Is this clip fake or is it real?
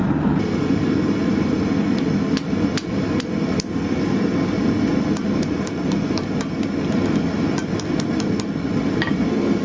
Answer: real